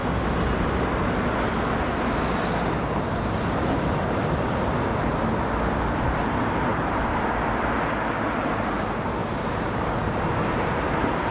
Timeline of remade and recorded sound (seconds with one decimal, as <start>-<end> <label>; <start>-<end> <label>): 0.0-6.7 recorded; 6.7-7.3 remade; 7.3-9.2 recorded; 9.2-10.2 remade; 10.2-11.3 recorded